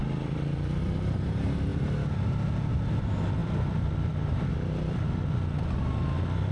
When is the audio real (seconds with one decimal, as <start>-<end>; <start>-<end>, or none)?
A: 0.8-3.4; 4.5-6.5